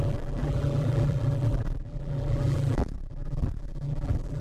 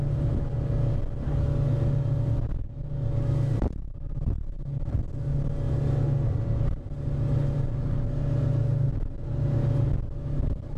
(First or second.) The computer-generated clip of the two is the first